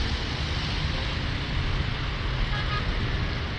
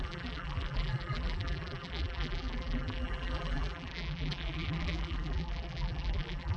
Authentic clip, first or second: first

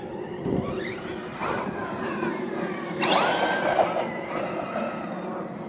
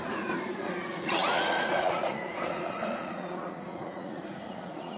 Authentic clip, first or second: first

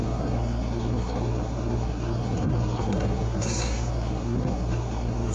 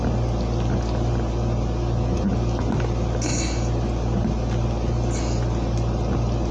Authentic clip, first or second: second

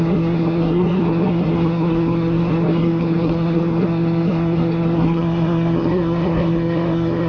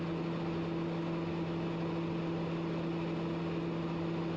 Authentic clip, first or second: second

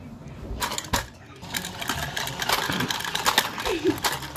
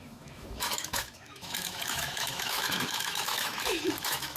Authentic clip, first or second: first